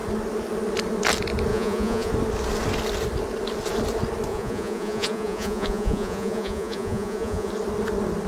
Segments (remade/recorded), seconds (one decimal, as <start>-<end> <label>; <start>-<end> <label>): 0.0-1.5 recorded; 1.5-2.1 remade; 2.1-4.3 recorded; 4.3-7.5 remade; 7.5-8.3 recorded